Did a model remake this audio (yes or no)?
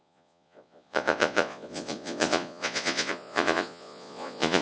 yes